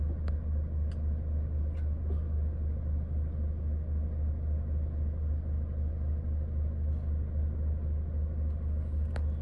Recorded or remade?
recorded